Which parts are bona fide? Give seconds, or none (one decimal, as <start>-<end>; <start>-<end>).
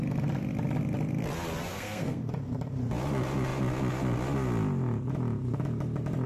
0.0-1.7; 2.3-6.3